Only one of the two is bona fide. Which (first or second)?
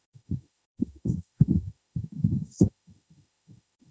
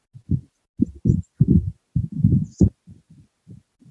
second